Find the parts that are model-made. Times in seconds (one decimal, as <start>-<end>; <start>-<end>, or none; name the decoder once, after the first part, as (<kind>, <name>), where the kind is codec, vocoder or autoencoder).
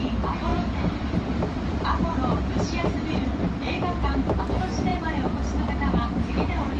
0.5-4.4 (vocoder, BigVGAN v2); 4.9-5.7